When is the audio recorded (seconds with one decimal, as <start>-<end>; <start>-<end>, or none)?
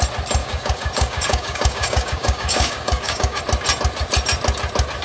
0.0-0.4; 3.4-5.0